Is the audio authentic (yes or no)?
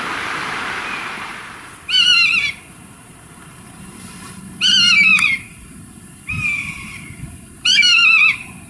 no